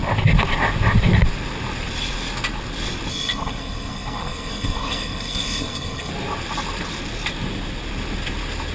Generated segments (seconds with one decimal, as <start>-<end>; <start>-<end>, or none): 3.1-6.1